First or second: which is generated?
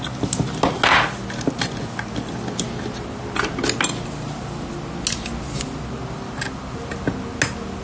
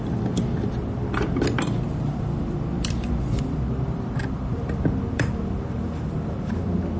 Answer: second